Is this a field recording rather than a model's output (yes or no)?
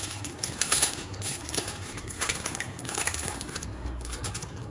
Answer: no